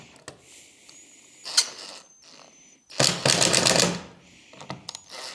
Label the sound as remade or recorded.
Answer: recorded